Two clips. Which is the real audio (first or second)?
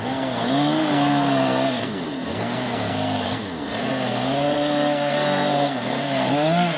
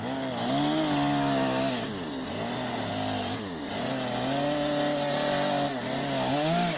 second